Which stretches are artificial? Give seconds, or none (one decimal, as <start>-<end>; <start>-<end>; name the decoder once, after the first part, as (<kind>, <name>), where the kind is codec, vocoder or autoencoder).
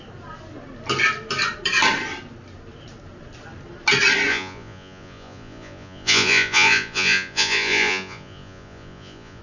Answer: 4.3-9.4 (vocoder, Vocos)